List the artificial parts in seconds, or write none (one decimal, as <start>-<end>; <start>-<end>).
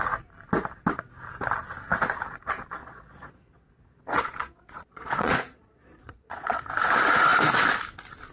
2.8-6.7